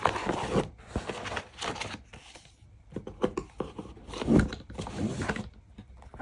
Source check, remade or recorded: recorded